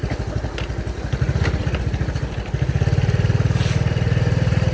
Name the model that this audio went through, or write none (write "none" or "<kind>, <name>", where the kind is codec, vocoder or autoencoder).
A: none